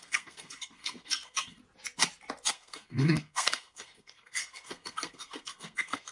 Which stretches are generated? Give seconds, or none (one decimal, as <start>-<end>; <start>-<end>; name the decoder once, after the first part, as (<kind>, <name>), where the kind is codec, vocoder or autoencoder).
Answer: 0.0-1.6 (codec, SNAC); 2.5-6.1